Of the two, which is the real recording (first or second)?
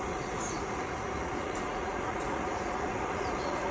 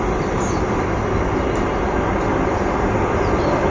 second